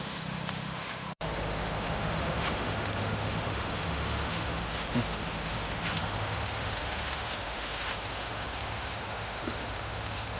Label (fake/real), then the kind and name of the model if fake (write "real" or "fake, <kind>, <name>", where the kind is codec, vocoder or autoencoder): fake, autoencoder, DAC-VAE